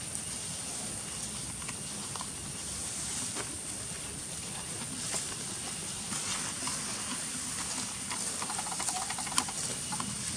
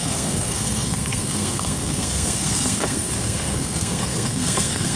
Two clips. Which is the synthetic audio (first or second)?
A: second